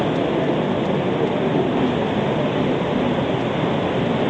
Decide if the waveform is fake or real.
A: real